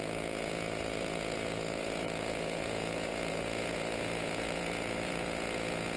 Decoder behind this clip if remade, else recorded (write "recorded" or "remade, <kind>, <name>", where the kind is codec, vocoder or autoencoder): remade, vocoder, Vocos